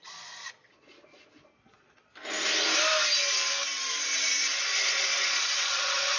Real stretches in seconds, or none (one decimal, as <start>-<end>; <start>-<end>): 2.1-4.6